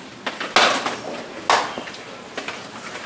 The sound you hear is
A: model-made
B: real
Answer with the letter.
B